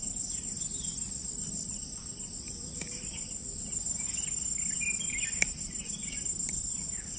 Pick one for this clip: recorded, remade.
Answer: recorded